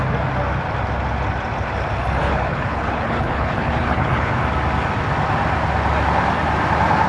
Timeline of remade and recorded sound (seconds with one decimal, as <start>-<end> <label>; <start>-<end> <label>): 0.0-2.2 recorded; 2.2-4.4 remade; 4.4-7.1 recorded